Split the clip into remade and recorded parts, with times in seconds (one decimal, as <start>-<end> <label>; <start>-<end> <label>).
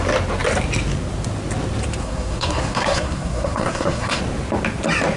0.0-2.0 recorded; 2.0-4.2 remade; 4.2-5.2 recorded